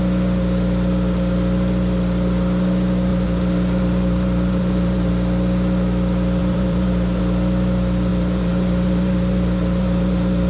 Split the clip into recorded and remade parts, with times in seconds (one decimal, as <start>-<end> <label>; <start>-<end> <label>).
0.0-3.1 recorded; 3.1-5.1 remade; 5.1-6.4 recorded; 6.4-7.2 remade; 7.2-8.1 recorded; 8.1-10.5 remade